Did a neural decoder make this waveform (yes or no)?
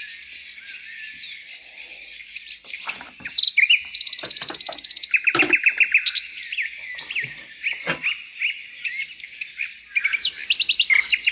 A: no